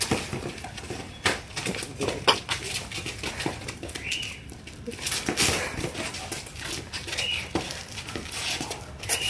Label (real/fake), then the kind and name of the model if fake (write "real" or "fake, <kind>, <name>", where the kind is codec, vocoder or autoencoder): real